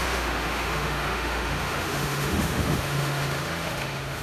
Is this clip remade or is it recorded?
remade